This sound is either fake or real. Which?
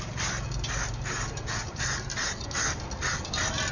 real